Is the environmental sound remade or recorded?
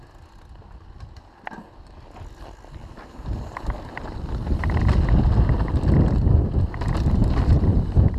recorded